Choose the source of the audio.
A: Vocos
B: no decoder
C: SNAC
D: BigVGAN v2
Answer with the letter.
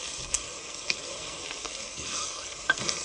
C